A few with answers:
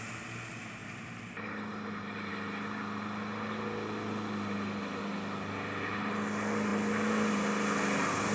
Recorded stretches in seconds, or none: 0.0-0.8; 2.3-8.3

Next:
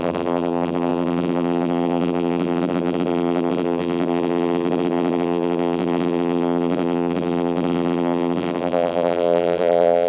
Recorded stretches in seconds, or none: none

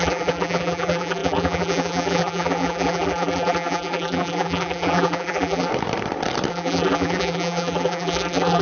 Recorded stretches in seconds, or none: 5.7-6.5

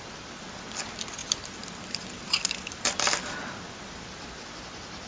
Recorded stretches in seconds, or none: 0.0-1.2; 4.3-5.1

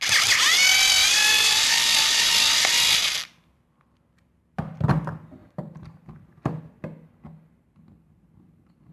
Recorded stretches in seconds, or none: 0.0-1.0; 3.0-8.9

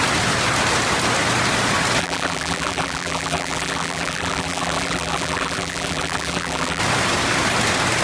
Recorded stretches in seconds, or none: 0.0-2.0; 6.8-8.0

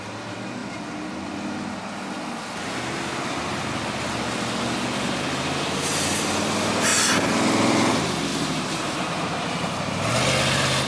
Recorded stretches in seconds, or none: 0.0-8.3; 9.2-10.9

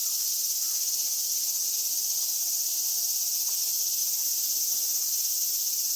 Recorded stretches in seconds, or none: 0.0-6.0